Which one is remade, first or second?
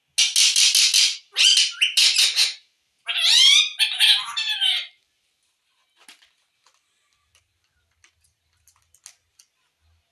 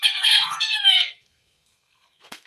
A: second